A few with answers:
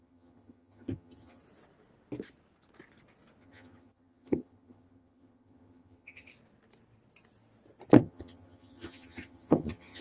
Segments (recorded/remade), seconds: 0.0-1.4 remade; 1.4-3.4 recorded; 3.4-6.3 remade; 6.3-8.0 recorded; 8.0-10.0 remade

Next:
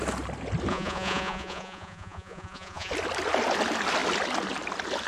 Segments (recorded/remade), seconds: 0.0-0.7 recorded; 0.7-2.9 remade; 2.9-5.1 recorded

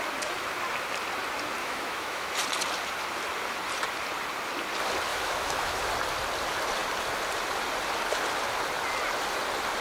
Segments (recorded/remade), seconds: 0.0-1.6 recorded; 1.6-2.3 remade; 2.3-5.1 recorded; 5.1-5.8 remade; 5.8-9.8 recorded